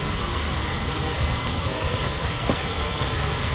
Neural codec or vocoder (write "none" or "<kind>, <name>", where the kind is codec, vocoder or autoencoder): codec, SNAC